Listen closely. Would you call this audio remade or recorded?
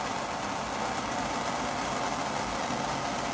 recorded